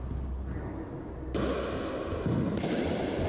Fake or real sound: real